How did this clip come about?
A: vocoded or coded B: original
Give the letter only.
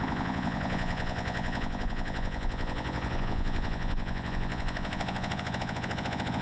A